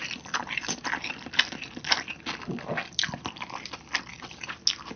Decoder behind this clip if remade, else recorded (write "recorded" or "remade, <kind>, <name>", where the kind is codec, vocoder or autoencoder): recorded